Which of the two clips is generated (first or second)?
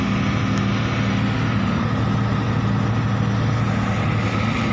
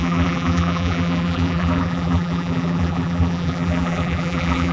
second